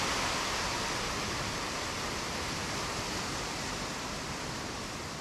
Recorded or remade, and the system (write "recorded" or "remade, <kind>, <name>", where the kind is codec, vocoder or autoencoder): recorded